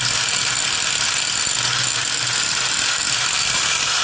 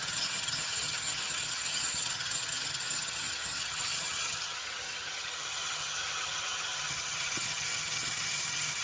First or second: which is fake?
second